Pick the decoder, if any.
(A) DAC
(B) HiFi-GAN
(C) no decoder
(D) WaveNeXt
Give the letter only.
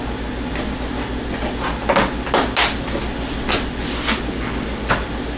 C